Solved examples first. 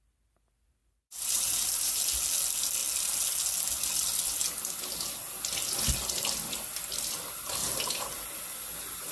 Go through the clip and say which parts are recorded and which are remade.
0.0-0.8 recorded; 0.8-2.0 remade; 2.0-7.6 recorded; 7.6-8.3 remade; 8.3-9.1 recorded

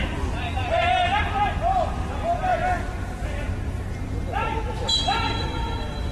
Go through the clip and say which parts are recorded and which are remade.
0.0-2.5 remade; 2.5-3.3 recorded; 3.3-6.1 remade

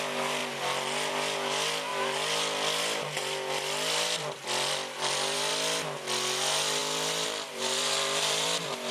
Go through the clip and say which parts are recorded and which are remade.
0.0-1.9 recorded; 1.9-5.5 remade; 5.5-6.8 recorded; 6.8-8.9 remade

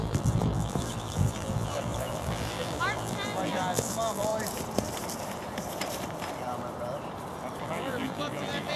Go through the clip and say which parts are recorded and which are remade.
0.0-4.3 remade; 4.3-7.6 recorded; 7.6-8.8 remade

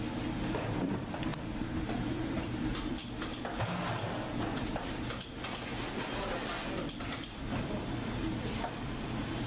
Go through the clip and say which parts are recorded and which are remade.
0.0-1.3 remade; 1.3-2.0 recorded; 2.0-3.0 remade; 3.0-7.4 recorded; 7.4-9.5 remade

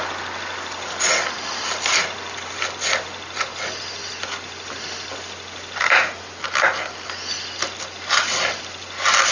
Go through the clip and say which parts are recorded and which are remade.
0.0-9.3 recorded

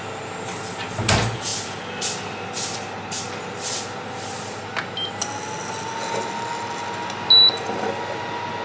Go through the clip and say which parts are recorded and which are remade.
0.0-8.6 recorded